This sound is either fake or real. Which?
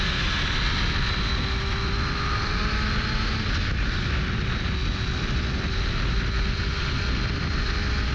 real